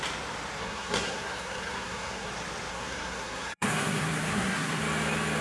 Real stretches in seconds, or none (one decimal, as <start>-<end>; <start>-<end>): 0.0-0.6; 2.3-2.7; 4.8-5.4